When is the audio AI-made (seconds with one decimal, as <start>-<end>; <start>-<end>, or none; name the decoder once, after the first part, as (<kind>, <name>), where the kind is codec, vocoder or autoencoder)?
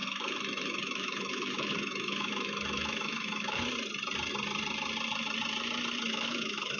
0.0-3.6 (autoencoder, DAC-VAE); 6.1-6.8